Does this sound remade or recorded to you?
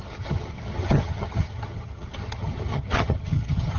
remade